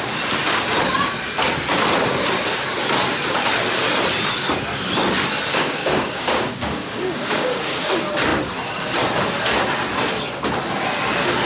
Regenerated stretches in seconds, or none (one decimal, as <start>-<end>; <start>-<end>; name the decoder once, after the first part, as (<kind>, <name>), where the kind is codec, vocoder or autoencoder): 5.5-7.9 (codec, DAC)